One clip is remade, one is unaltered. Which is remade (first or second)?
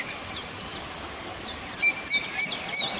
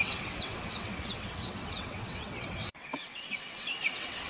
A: second